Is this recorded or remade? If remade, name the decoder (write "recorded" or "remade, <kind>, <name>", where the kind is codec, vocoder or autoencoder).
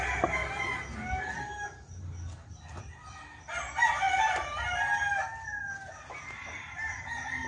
recorded